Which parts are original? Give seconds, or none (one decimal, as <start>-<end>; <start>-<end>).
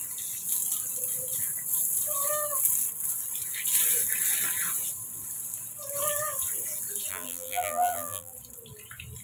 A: 0.0-7.1; 8.3-9.2